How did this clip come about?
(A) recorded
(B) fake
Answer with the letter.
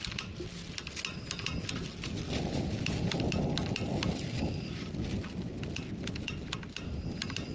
A